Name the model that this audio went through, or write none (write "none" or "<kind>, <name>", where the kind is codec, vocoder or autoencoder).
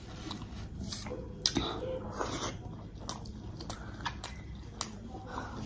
none